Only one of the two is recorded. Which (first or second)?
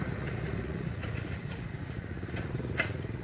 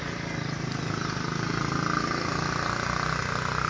second